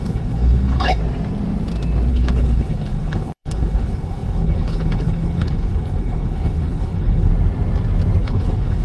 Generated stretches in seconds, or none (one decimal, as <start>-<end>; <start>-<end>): 0.0-1.0; 2.1-7.3; 8.2-8.8